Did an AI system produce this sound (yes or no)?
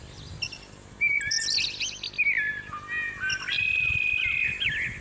no